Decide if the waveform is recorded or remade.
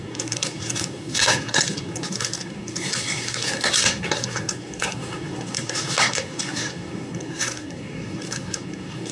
remade